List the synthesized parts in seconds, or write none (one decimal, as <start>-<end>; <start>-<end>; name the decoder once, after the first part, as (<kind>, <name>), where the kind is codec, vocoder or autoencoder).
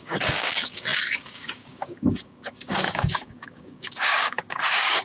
0.0-5.0 (codec, DAC)